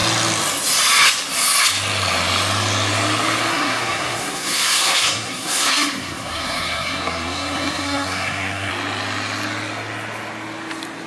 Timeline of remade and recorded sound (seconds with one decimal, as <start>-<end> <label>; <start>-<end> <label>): 0.0-3.5 recorded; 3.5-8.7 remade; 8.7-11.1 recorded